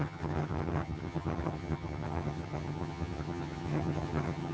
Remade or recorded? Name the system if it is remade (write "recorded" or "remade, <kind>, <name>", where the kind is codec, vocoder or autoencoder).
remade, vocoder, HiFi-GAN